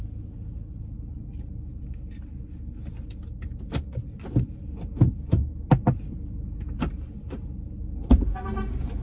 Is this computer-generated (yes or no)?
no